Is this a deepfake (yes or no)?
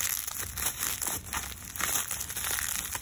no